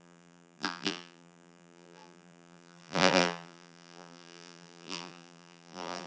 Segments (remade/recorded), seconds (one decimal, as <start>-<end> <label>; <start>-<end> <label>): 0.0-6.1 remade